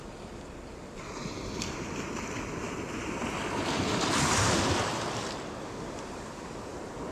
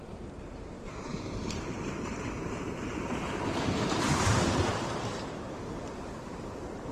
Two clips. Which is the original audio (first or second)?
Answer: first